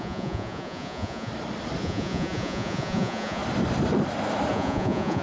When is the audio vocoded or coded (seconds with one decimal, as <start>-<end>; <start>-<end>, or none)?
0.0-1.3; 1.8-3.4; 4.5-5.2